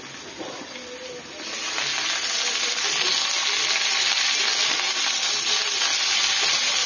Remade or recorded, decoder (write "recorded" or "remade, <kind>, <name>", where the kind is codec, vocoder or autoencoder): recorded